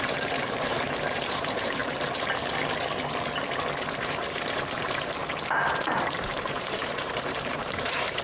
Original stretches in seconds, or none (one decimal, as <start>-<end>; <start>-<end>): 1.8-4.0; 5.2-5.7